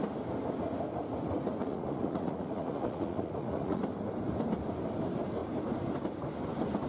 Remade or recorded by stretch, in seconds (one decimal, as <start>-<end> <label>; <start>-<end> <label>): 0.0-1.6 recorded; 1.6-3.8 remade; 3.8-6.9 recorded